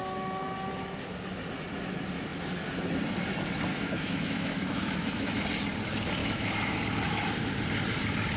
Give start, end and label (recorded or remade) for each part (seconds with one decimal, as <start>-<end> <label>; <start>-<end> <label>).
0.0-3.7 recorded; 3.7-5.4 remade; 5.4-6.2 recorded; 6.2-6.8 remade; 6.8-8.4 recorded